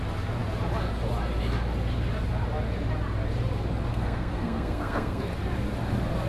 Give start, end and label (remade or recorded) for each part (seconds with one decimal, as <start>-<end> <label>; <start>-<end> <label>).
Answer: 0.0-3.9 recorded; 3.9-5.2 remade; 5.2-6.3 recorded